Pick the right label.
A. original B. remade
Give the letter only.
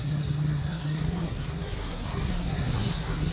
B